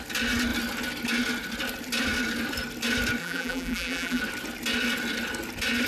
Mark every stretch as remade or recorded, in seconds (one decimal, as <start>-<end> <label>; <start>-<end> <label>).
0.0-3.2 recorded; 3.2-4.2 remade; 4.2-5.9 recorded